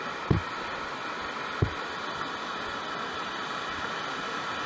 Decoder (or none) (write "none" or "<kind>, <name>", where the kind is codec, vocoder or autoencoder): none